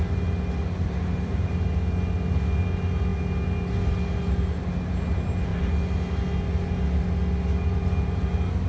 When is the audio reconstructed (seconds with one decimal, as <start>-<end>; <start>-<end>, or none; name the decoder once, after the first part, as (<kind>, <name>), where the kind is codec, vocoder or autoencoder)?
none